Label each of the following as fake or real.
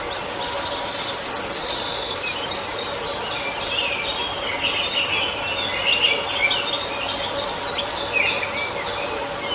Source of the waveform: real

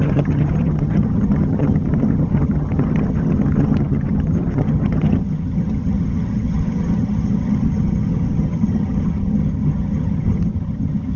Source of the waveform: fake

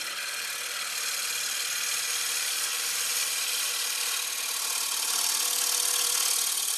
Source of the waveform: real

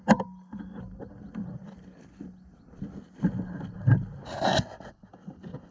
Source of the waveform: real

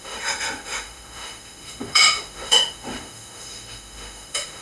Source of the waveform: fake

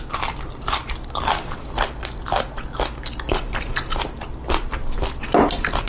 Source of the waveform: real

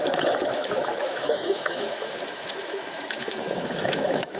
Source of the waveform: fake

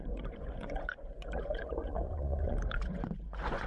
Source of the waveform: fake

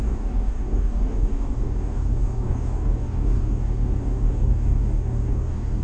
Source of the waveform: fake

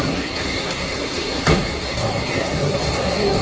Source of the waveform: fake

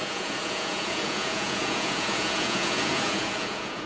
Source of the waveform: fake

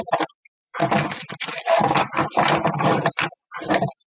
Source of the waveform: fake